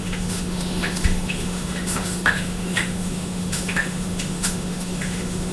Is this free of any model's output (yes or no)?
no